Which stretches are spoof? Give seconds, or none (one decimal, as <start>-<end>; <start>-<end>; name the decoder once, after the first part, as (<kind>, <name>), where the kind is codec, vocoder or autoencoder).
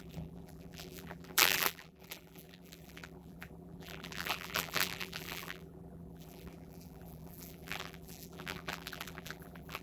0.0-9.8 (vocoder, BigVGAN v2)